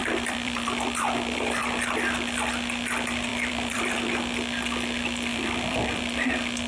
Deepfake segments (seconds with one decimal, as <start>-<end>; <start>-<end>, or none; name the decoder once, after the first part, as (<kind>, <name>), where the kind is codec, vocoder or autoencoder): 0.0-1.6 (vocoder, BigVGAN v2); 3.3-4.2; 5.3-6.0